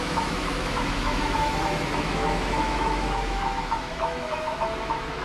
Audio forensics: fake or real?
fake